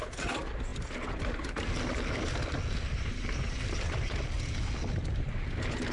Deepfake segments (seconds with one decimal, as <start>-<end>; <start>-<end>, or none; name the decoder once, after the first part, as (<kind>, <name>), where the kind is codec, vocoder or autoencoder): 0.7-2.0 (vocoder, BigVGAN v2); 2.9-4.2